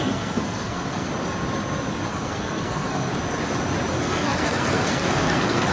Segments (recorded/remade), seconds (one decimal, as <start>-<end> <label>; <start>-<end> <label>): 0.0-1.1 remade; 1.1-2.1 recorded; 2.1-3.1 remade; 3.1-3.9 recorded; 3.9-5.7 remade